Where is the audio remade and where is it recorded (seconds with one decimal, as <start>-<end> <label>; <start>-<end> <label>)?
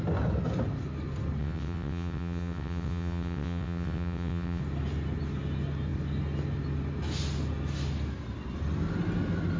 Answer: 0.0-1.4 recorded; 1.4-4.6 remade; 4.6-9.6 recorded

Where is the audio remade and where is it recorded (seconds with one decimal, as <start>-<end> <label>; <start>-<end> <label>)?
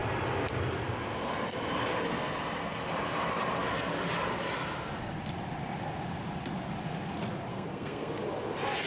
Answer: 0.0-7.5 recorded; 7.5-8.1 remade; 8.1-8.9 recorded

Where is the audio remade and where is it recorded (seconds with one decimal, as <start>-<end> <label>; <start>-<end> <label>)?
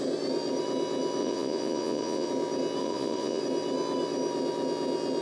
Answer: 0.0-1.2 recorded; 1.2-2.3 remade; 2.3-2.8 recorded; 2.8-3.4 remade; 3.4-5.2 recorded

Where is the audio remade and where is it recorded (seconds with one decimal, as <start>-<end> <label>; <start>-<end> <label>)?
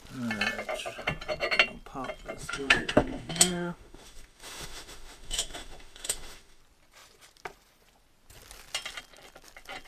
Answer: 0.0-2.4 recorded; 2.4-6.6 remade; 6.6-9.9 recorded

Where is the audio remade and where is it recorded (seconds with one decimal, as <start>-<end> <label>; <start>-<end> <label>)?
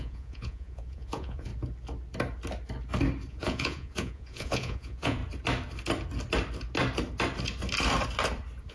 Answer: 0.0-1.5 remade; 1.5-3.3 recorded; 3.3-5.2 remade; 5.2-8.7 recorded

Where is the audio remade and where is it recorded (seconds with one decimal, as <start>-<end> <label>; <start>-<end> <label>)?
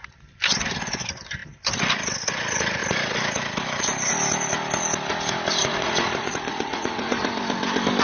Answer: 0.0-5.6 recorded; 5.6-7.2 remade; 7.2-8.0 recorded